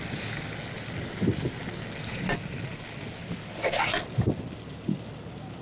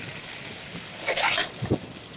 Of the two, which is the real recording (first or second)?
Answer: first